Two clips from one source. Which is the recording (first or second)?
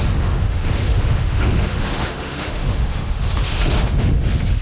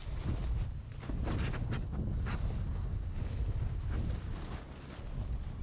second